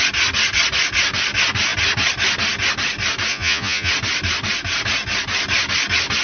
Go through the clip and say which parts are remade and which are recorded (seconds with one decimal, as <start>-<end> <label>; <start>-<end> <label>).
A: 0.0-3.3 recorded; 3.3-3.9 remade; 3.9-6.2 recorded